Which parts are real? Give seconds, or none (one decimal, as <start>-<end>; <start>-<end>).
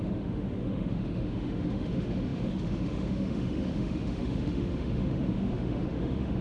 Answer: none